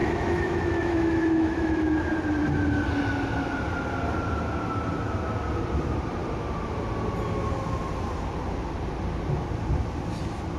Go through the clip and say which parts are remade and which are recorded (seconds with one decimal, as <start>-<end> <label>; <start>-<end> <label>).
0.0-1.9 remade; 1.9-10.6 recorded